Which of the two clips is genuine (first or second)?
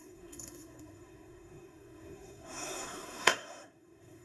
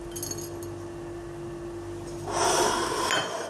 second